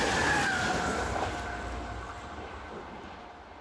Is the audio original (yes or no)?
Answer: yes